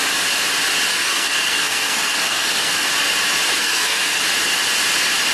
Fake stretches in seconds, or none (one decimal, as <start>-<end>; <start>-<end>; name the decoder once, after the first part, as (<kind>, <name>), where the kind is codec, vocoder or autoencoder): 0.9-2.9 (codec, SNAC); 3.6-4.2